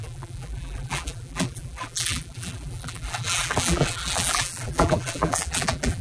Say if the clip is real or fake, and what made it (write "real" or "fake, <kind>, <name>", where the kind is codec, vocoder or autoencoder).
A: fake, vocoder, BigVGAN v2